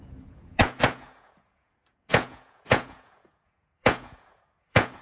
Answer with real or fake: fake